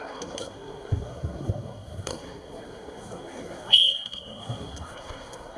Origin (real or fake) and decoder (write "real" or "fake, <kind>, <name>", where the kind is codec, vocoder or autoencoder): fake, codec, SNAC